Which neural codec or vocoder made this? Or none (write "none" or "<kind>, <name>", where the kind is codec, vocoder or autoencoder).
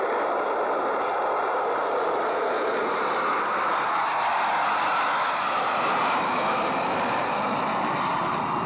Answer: vocoder, BigVGAN v2